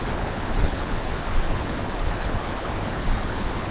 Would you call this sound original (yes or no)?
no